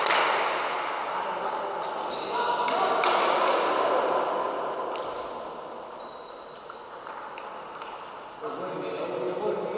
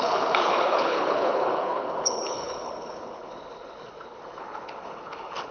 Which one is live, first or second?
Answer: first